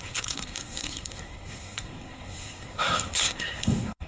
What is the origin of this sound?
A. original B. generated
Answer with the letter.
B